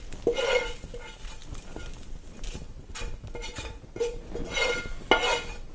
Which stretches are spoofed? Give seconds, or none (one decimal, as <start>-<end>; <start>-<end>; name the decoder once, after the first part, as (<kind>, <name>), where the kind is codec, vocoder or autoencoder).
3.4-4.3 (vocoder, Vocos)